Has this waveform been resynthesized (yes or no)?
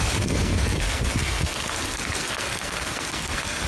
yes